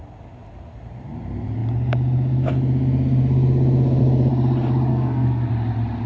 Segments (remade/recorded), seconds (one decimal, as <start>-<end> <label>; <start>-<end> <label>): 0.0-4.9 recorded; 4.9-5.5 remade; 5.5-6.1 recorded